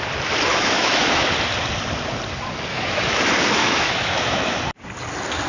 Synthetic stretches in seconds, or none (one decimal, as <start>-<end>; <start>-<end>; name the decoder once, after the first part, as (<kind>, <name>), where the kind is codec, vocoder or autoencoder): 0.5-1.3 (autoencoder, DAC-VAE); 2.7-3.2; 3.6-4.6